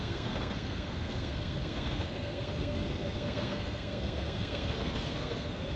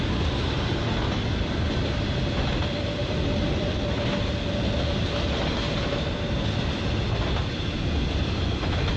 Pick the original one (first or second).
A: second